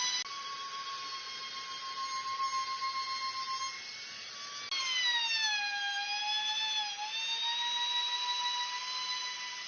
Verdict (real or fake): real